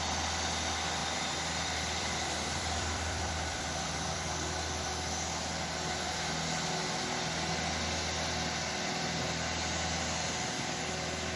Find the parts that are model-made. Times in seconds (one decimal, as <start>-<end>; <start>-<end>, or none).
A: 1.0-4.9